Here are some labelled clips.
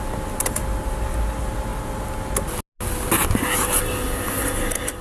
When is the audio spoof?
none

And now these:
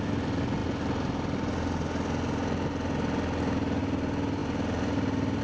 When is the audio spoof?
none

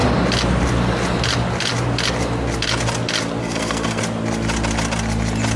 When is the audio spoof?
3.4-4.0 (codec, SNAC)

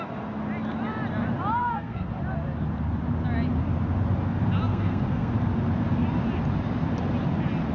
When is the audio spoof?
1.6-2.1 (codec, SNAC); 4.7-5.3

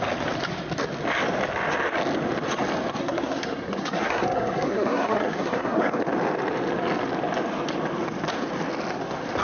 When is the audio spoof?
3.0-6.0 (codec, SNAC)